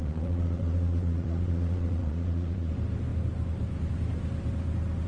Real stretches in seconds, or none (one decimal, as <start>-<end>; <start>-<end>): 2.7-5.1